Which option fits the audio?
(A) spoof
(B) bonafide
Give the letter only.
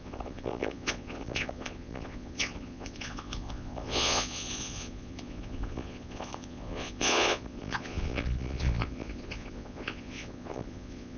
A